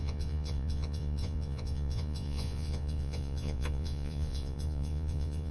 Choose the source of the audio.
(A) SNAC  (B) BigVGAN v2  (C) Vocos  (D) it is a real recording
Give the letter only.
C